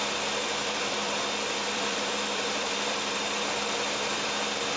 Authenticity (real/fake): fake